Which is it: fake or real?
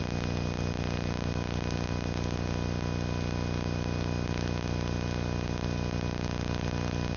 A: real